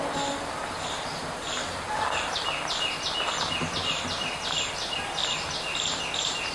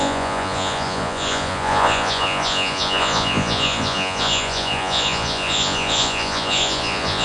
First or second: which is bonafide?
first